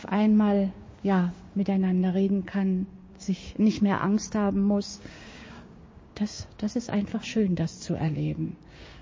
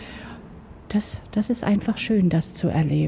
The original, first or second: second